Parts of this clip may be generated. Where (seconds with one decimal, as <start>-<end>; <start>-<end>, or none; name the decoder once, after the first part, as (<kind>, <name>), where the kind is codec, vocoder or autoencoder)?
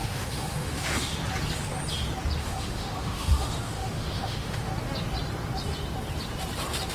0.0-1.1 (autoencoder, DAC-VAE); 2.4-4.7